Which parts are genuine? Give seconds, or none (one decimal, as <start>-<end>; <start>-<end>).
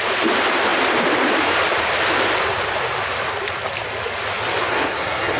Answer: 0.0-4.7